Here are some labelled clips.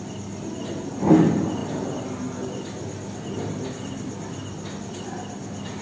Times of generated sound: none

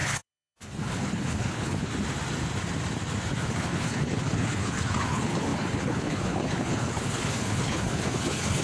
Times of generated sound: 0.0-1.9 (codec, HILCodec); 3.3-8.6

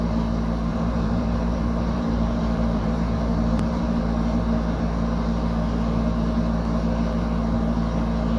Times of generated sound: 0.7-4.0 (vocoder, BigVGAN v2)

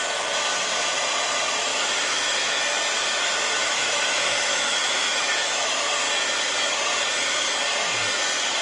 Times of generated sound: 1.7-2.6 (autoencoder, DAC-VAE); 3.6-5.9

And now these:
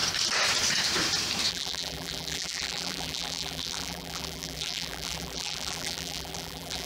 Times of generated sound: 1.5-6.9 (vocoder, BigVGAN v2)

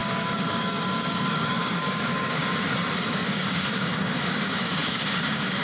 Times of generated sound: 0.0-2.4 (codec, DAC); 3.1-5.6

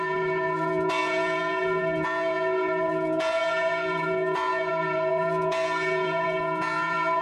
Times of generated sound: 0.0-7.2 (vocoder, Vocos)